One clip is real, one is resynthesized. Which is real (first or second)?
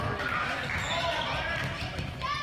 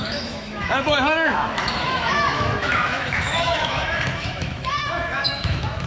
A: first